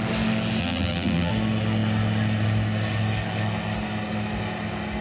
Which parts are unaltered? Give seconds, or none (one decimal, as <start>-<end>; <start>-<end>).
0.0-0.6; 1.3-5.0